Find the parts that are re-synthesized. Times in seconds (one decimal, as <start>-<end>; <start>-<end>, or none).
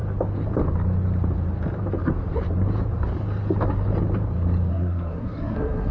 4.7-5.9